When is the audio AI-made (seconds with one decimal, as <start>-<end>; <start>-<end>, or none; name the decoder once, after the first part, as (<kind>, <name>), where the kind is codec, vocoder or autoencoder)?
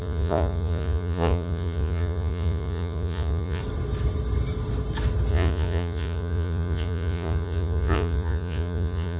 0.0-3.6 (vocoder, Vocos); 5.3-9.2